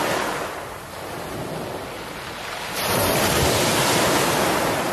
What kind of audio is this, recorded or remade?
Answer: recorded